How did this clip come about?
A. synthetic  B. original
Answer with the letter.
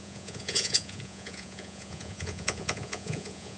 A